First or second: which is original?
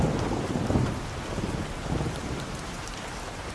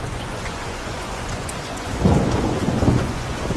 first